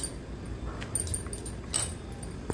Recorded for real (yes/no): yes